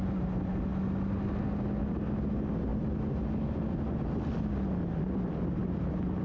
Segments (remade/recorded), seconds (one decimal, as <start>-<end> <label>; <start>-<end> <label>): 0.0-6.2 recorded